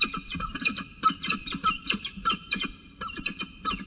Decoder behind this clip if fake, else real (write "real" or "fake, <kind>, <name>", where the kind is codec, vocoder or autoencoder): fake, vocoder, BigVGAN v2